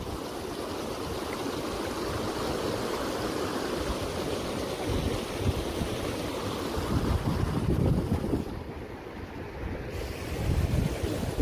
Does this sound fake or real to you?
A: real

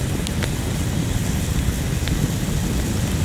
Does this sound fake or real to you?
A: real